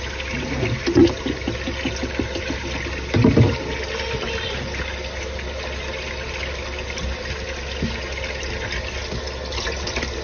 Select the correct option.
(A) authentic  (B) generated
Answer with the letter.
A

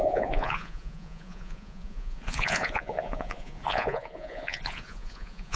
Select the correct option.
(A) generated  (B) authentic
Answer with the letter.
A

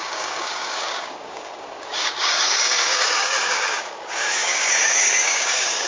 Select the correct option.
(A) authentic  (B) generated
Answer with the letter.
B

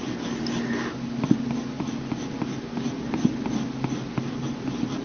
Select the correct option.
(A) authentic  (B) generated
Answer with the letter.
A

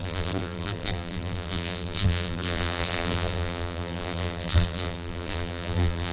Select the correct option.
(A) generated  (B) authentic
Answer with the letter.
A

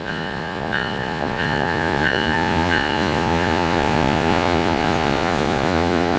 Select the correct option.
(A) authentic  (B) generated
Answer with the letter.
B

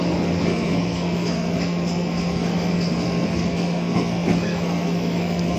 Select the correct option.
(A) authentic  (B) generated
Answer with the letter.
B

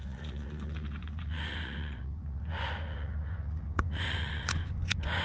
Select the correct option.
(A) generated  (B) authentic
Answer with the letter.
A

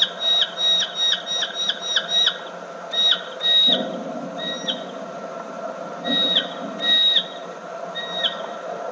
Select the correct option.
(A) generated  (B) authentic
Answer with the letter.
B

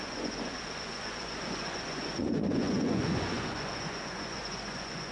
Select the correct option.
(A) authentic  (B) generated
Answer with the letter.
B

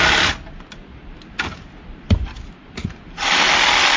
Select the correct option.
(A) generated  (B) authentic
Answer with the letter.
B